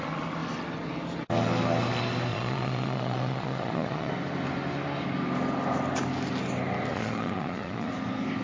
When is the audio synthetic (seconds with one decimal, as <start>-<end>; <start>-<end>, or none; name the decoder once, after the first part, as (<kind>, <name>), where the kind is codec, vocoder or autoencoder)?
2.3-4.1 (vocoder, Vocos); 6.9-7.9